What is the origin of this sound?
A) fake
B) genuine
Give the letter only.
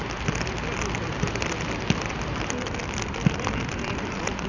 B